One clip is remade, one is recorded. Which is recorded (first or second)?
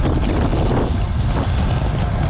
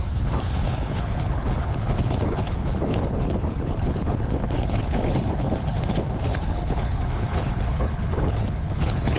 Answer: first